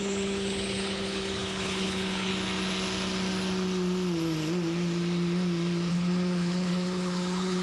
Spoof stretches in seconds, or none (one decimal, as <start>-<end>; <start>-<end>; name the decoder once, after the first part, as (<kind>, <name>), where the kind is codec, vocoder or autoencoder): 0.0-2.3 (codec, HILCodec); 5.9-7.6